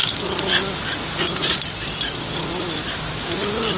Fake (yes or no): no